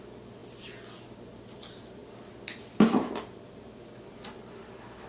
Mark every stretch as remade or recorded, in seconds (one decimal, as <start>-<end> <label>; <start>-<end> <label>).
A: 0.0-5.1 recorded